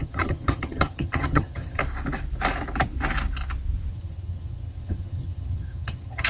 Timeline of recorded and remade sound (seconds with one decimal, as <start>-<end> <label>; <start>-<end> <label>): 0.0-1.8 remade; 1.8-3.9 recorded; 3.9-6.3 remade